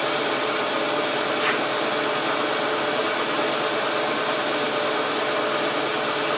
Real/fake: real